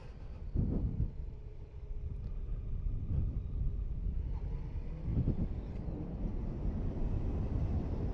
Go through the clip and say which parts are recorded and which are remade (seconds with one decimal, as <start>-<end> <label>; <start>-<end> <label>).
0.0-3.3 remade; 3.3-5.1 recorded; 5.1-5.6 remade; 5.6-8.1 recorded